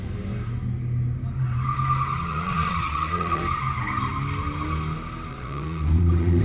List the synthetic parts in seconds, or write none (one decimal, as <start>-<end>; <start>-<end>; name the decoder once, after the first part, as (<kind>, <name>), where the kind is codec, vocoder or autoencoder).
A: 2.3-3.4 (vocoder, Vocos); 5.3-6.4